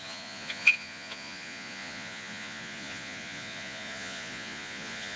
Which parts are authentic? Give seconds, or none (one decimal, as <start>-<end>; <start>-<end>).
none